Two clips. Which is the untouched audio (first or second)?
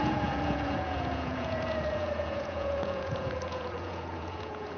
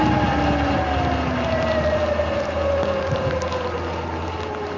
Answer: second